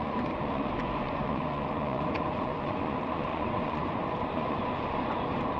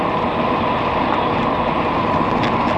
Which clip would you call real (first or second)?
second